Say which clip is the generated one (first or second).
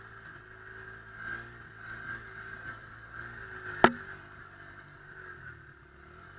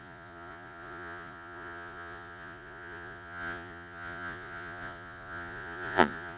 second